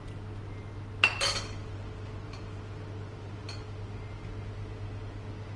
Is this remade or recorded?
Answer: recorded